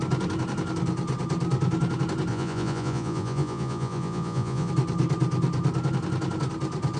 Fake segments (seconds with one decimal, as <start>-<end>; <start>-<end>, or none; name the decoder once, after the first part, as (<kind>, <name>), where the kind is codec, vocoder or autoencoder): 2.3-4.7 (vocoder, Vocos)